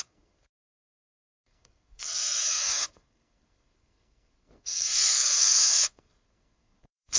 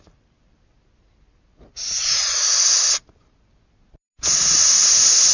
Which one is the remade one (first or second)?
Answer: first